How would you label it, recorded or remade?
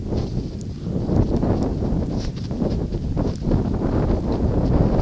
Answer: recorded